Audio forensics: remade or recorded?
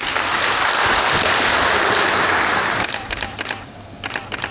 recorded